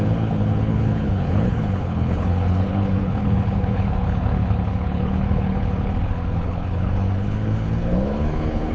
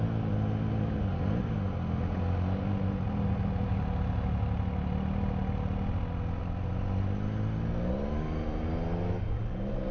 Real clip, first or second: second